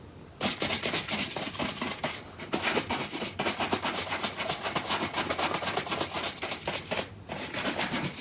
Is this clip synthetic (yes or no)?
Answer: yes